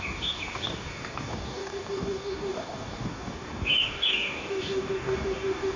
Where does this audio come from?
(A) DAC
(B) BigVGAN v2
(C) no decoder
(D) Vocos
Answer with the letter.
A